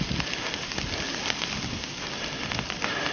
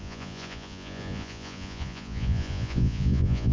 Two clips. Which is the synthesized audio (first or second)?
second